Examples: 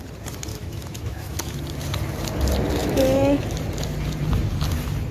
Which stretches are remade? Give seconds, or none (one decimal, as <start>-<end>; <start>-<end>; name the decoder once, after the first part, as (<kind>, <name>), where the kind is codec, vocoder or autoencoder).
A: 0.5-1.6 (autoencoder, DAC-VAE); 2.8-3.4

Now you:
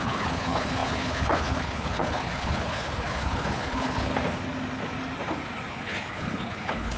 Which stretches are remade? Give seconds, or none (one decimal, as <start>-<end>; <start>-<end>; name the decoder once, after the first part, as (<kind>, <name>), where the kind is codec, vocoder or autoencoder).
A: 0.0-4.1 (codec, HILCodec); 5.7-7.0

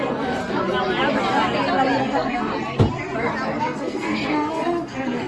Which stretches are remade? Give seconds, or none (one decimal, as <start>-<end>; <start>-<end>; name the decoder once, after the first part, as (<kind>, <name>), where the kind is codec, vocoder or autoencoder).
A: 0.0-0.4 (codec, SNAC); 2.0-2.5; 3.6-5.3

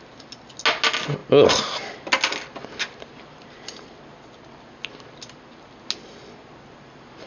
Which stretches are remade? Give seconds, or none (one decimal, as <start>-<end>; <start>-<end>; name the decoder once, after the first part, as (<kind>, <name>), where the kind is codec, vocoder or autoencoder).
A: none

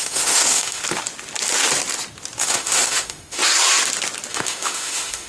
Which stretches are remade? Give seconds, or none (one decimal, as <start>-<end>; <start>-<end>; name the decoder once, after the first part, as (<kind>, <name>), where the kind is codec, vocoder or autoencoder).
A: 0.0-0.8 (autoencoder, DAC-VAE); 2.4-3.4; 4.3-5.3

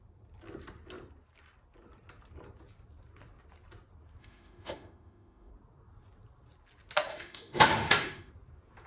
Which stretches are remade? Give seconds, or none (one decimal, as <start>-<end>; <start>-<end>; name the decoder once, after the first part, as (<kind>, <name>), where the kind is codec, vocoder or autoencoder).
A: 4.2-5.5 (autoencoder, DAC-VAE); 7.1-8.3